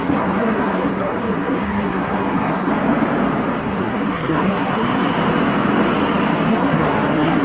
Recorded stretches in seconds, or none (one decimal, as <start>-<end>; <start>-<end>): 2.7-3.6; 5.1-6.5